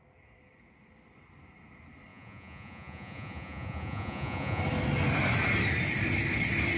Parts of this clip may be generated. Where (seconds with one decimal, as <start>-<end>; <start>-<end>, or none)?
2.1-4.6